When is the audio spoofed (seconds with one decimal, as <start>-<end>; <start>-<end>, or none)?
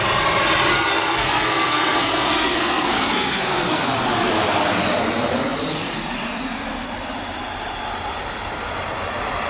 0.7-3.9